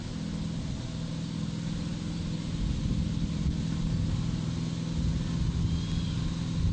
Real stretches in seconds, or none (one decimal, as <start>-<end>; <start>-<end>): 0.0-6.7